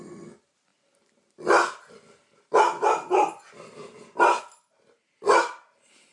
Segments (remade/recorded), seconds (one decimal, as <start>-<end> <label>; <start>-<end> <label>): 0.0-6.1 recorded

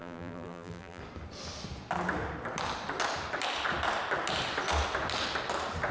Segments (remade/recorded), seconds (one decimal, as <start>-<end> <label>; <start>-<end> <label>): 0.0-1.0 remade; 1.0-5.9 recorded

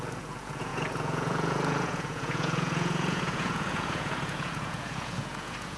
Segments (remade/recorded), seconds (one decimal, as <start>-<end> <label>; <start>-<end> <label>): 0.0-5.8 remade

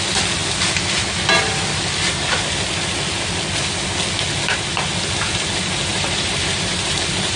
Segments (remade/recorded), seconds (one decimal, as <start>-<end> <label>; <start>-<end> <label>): 0.0-5.9 recorded; 5.9-7.4 remade

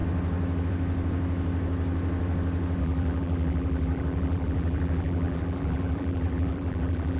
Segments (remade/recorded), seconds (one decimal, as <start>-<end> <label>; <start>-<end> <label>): 0.0-2.8 recorded; 2.8-7.2 remade

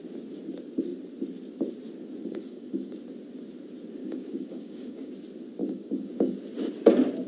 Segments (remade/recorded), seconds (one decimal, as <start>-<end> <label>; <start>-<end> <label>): 0.0-2.2 recorded; 2.2-3.0 remade; 3.0-4.0 recorded; 4.0-5.1 remade; 5.1-5.6 recorded; 5.6-6.3 remade; 6.3-7.3 recorded

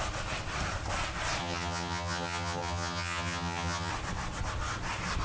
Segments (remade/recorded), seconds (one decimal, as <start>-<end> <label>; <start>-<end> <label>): 0.0-1.4 recorded; 1.4-3.9 remade; 3.9-5.2 recorded

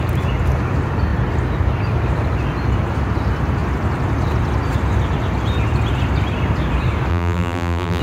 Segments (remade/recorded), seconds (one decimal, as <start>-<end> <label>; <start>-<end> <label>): 0.0-7.1 recorded; 7.1-8.0 remade